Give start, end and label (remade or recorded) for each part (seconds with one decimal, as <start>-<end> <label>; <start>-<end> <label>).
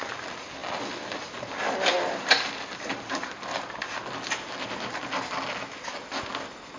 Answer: 0.0-0.6 recorded; 0.6-1.5 remade; 1.5-1.9 recorded; 1.9-3.4 remade; 3.4-6.8 recorded